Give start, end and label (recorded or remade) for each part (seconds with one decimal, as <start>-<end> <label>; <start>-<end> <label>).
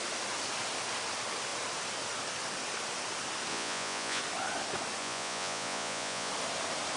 0.0-3.5 recorded; 3.5-4.2 remade; 4.2-5.0 recorded; 5.0-6.3 remade; 6.3-7.0 recorded